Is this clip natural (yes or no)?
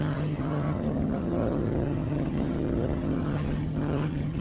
no